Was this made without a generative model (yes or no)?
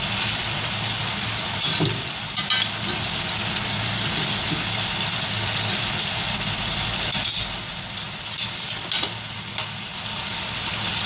yes